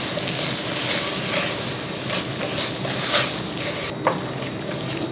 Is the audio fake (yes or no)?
no